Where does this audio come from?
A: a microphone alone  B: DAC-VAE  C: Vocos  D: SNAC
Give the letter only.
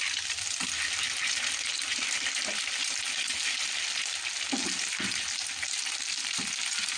A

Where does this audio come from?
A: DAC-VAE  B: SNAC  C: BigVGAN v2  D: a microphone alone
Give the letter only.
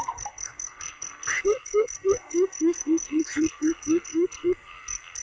B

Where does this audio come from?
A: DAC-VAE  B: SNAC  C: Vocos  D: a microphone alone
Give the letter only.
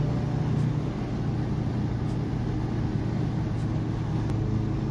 D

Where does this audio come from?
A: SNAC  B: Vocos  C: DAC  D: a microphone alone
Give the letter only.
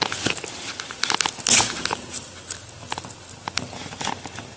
D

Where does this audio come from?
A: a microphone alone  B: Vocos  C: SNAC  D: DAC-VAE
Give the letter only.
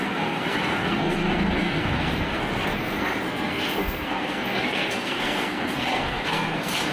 C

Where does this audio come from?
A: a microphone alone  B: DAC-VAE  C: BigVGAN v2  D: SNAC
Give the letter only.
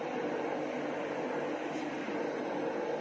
A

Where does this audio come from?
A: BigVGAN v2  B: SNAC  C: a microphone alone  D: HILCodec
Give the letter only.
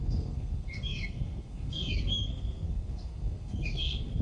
B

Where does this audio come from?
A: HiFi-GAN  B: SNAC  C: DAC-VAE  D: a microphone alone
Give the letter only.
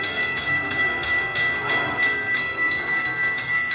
B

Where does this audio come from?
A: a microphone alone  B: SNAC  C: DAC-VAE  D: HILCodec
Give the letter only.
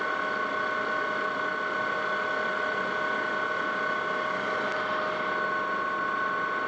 A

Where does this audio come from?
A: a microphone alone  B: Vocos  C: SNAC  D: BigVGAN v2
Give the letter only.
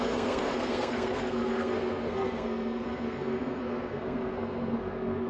C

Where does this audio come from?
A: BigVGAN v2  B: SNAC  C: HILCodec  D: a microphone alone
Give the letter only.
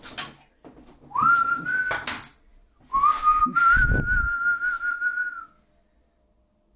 D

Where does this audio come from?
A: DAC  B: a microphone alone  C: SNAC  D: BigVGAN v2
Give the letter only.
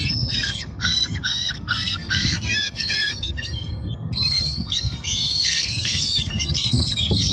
C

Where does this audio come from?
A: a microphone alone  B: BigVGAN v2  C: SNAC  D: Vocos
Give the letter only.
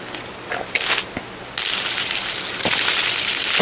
A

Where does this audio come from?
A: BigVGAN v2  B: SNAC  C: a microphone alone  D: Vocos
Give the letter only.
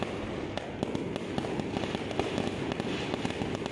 C